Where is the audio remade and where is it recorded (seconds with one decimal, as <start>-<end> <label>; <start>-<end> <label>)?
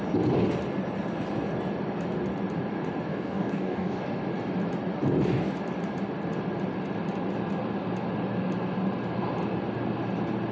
0.0-3.1 recorded; 3.1-4.0 remade; 4.0-10.5 recorded